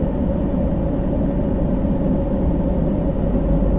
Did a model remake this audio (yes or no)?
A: no